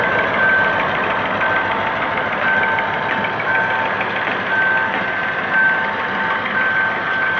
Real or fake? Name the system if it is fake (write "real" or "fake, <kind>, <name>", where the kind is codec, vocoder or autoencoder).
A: real